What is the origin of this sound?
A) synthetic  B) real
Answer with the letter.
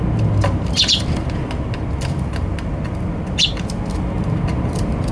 B